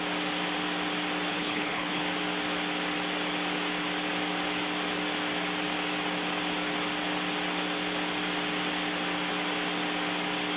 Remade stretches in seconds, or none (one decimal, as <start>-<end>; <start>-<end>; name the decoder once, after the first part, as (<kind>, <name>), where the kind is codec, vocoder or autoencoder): 1.3-2.0 (codec, HILCodec)